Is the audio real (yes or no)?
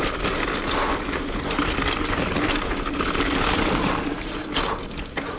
yes